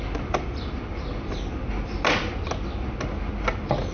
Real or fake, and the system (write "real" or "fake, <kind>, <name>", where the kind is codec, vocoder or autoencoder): real